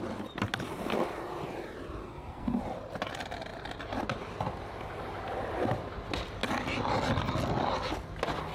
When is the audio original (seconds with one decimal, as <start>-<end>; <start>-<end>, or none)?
0.0-2.0; 2.6-8.5